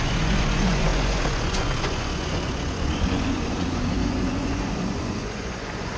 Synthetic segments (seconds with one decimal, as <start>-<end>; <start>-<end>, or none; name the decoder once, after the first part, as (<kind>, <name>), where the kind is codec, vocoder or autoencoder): 0.0-6.0 (vocoder, Vocos)